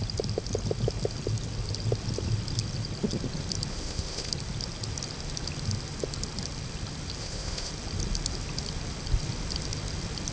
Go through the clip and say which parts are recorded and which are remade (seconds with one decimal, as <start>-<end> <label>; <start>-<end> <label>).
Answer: 0.0-3.7 recorded; 3.7-4.3 remade; 4.3-7.2 recorded; 7.2-7.7 remade; 7.7-10.3 recorded